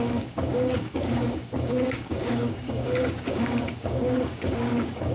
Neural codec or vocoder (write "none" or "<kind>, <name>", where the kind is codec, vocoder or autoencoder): codec, DAC